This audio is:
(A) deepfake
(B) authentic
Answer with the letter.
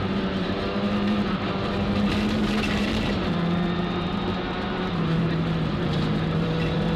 A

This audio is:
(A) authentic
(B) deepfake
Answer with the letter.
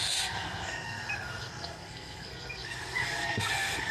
B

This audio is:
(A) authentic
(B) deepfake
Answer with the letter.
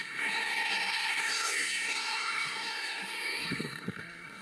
B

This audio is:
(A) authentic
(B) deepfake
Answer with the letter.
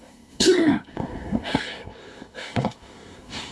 B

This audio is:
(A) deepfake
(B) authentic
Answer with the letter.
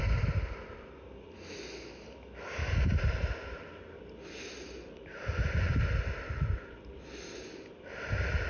B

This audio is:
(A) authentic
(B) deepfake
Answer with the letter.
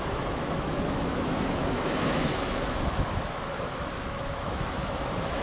B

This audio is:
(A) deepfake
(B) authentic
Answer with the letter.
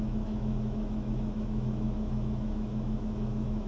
A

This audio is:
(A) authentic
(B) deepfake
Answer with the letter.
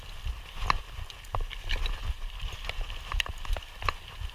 A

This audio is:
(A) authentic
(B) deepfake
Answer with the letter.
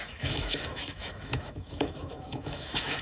B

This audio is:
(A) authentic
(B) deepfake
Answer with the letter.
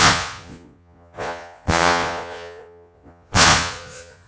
B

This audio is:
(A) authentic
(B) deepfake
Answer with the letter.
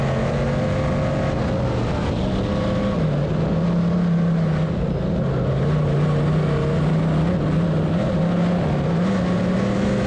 A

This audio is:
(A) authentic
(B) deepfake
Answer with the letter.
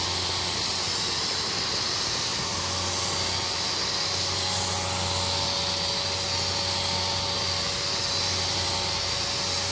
A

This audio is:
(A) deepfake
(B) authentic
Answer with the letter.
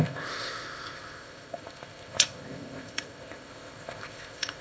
A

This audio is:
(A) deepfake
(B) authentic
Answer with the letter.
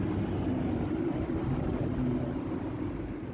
B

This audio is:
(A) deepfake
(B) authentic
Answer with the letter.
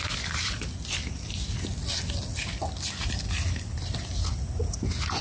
B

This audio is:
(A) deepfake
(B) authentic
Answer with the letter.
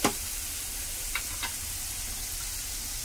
B